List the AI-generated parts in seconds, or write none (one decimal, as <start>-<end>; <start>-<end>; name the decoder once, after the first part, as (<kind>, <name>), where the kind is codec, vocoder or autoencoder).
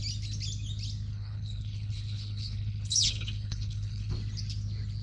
1.1-4.1 (codec, HILCodec)